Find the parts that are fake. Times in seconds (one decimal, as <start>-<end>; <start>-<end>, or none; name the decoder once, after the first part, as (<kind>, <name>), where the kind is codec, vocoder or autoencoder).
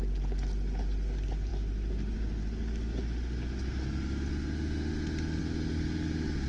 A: none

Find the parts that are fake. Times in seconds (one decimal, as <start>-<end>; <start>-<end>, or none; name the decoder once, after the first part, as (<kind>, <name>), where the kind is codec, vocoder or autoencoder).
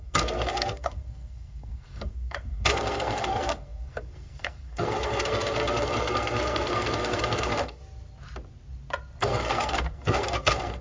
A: 0.0-7.8 (codec, SNAC); 9.2-10.8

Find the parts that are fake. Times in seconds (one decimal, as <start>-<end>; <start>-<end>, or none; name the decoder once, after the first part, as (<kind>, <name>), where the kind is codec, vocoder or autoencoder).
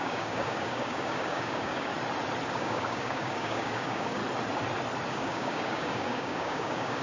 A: 0.0-1.9 (codec, DAC); 2.5-4.2; 5.1-7.0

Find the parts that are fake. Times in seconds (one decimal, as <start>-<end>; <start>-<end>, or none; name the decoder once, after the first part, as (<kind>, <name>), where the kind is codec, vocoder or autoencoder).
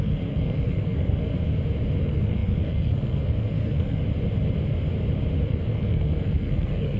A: 0.0-1.3 (codec, SNAC); 2.0-4.0; 5.5-7.0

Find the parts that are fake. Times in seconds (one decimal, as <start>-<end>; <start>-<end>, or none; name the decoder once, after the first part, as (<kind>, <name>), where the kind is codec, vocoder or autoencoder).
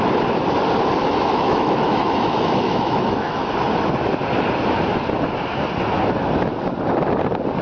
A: 1.0-3.5 (autoencoder, DAC-VAE)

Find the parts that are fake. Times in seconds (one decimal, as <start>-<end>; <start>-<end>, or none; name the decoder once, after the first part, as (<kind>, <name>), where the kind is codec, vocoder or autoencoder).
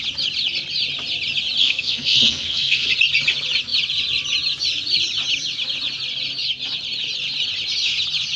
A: 1.6-2.9 (codec, SNAC)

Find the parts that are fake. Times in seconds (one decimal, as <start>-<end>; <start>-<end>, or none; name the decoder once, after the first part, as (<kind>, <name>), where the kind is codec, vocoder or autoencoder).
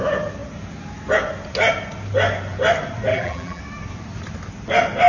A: 3.1-3.6 (vocoder, BigVGAN v2)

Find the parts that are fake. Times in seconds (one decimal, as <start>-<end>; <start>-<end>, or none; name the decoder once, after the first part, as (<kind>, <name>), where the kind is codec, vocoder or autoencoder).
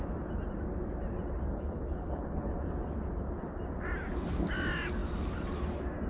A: 1.5-2.5 (codec, HILCodec)